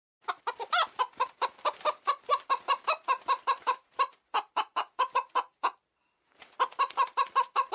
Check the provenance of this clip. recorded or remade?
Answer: remade